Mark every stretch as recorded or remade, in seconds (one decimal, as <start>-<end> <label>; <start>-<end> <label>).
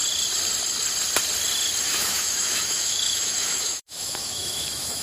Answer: 0.0-1.9 recorded; 1.9-5.0 remade